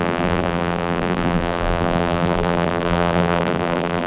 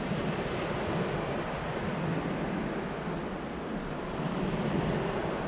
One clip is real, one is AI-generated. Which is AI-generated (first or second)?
first